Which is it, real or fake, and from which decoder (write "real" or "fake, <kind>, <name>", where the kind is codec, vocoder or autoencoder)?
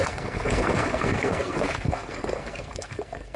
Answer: fake, codec, SNAC